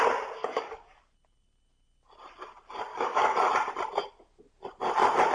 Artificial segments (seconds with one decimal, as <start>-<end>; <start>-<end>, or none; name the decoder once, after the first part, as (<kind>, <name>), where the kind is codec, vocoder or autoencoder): 0.4-1.0 (codec, DAC); 2.9-3.5